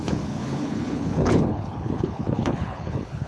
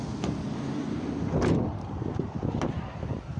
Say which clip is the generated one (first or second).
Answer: first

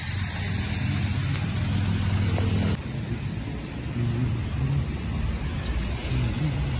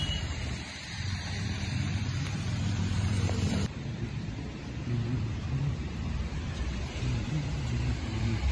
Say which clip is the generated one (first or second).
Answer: second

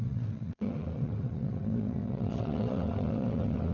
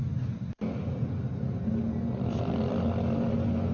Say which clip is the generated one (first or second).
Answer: first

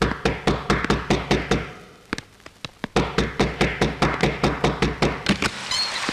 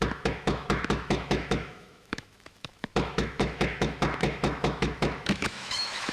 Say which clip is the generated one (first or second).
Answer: second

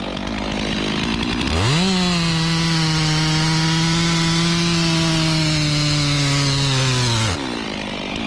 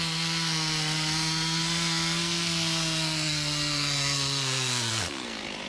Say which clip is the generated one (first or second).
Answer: second